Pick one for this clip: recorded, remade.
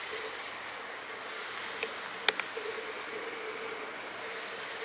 recorded